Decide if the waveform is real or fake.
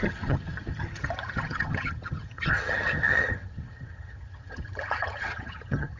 fake